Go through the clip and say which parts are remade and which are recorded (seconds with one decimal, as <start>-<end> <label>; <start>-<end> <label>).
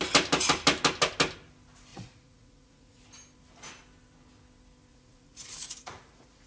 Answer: 0.0-1.9 recorded; 1.9-3.0 remade; 3.0-4.9 recorded; 4.9-6.5 remade